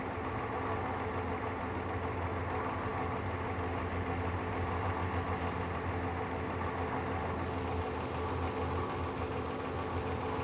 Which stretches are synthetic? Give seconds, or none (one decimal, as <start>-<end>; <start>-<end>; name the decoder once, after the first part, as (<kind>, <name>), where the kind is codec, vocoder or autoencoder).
none